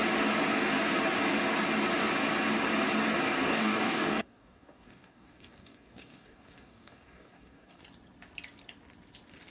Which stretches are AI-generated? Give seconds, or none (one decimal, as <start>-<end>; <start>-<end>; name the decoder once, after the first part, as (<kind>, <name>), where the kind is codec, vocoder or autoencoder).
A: 3.4-7.8 (codec, DAC)